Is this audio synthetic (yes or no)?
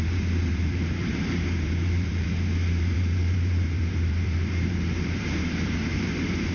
yes